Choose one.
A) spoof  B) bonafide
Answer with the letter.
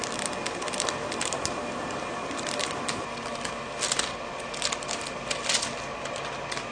B